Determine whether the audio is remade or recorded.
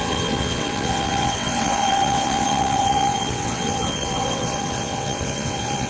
remade